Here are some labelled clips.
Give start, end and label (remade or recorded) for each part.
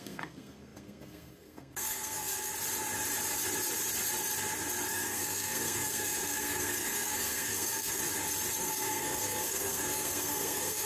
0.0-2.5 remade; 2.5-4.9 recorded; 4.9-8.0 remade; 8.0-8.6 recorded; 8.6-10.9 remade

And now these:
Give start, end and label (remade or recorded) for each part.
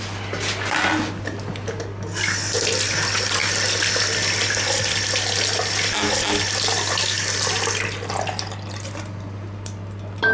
0.0-10.3 recorded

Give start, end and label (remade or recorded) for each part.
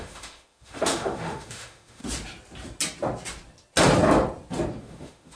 0.0-2.0 remade; 2.0-4.8 recorded; 4.8-5.4 remade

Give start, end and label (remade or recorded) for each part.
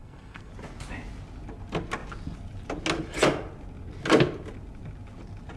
0.0-0.5 remade; 0.5-5.6 recorded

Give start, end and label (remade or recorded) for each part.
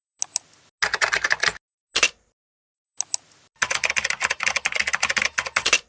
0.0-5.9 recorded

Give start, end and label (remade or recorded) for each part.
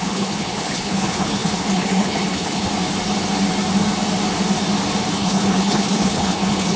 0.0-2.7 remade; 2.7-5.1 recorded; 5.1-6.8 remade